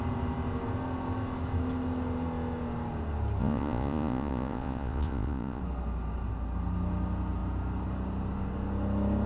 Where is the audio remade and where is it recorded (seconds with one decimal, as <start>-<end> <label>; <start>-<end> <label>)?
0.0-3.4 recorded; 3.4-5.6 remade; 5.6-9.3 recorded